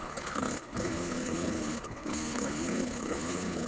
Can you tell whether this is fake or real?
fake